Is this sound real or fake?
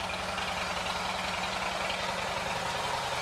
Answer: real